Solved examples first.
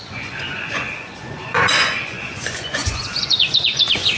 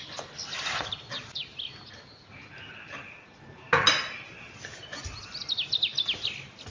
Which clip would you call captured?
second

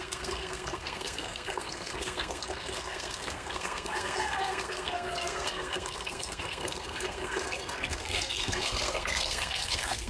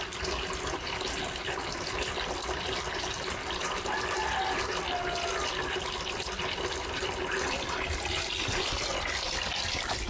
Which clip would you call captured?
second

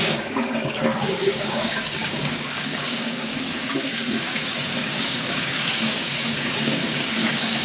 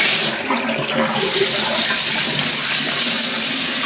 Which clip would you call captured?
second